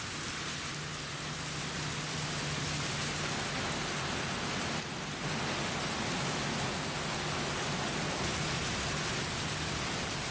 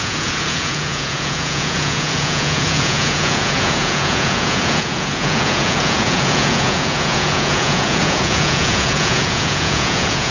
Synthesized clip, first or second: second